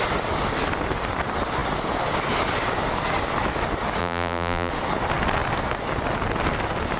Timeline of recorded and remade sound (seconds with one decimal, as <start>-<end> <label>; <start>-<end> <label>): 0.0-4.0 recorded; 4.0-4.7 remade; 4.7-7.0 recorded